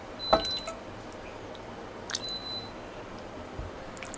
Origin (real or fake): real